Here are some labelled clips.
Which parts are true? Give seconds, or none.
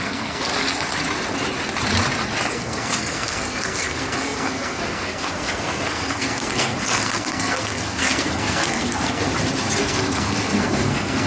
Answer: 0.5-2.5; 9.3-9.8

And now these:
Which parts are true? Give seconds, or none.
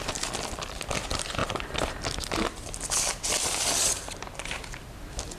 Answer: 0.0-5.4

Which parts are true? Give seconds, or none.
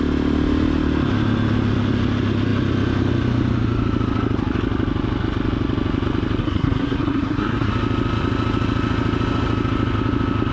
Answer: 0.0-6.4; 7.7-10.5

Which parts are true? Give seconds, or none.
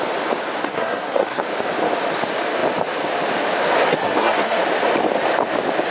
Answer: 0.0-0.6; 1.4-3.9; 4.6-5.9